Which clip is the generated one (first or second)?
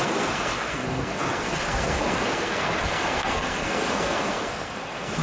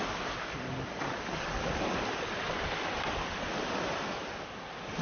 first